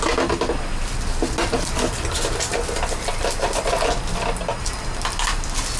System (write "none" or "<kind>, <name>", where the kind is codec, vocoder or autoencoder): none